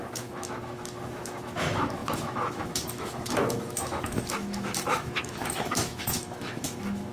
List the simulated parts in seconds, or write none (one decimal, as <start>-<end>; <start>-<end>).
0.0-7.1

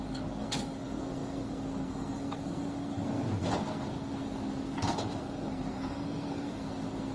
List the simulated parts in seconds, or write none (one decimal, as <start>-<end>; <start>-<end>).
0.0-7.1